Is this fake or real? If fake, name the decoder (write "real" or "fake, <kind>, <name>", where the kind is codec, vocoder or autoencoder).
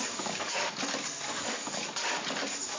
fake, codec, DAC